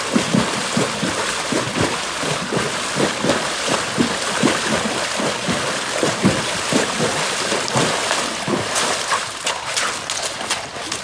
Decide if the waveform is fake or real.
real